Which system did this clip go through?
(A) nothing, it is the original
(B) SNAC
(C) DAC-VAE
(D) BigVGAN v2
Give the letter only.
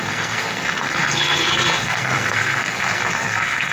B